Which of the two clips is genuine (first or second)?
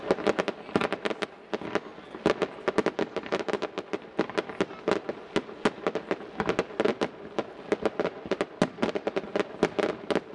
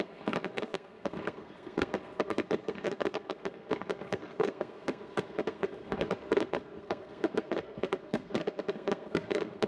first